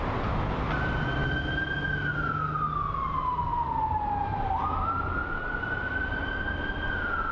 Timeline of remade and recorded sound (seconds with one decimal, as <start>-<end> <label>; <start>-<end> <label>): 0.0-7.3 recorded